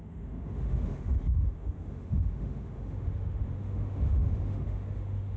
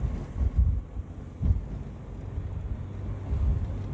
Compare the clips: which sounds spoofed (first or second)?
first